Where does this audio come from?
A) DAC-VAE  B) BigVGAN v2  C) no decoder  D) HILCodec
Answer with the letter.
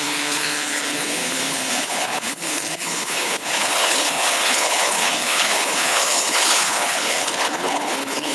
D